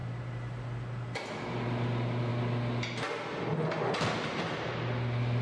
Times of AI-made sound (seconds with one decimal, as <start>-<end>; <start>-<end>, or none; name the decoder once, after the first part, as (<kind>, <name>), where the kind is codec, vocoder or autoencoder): none